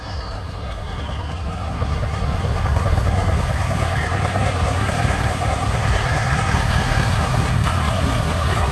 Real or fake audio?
fake